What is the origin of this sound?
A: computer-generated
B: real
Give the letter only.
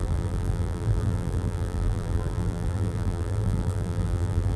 A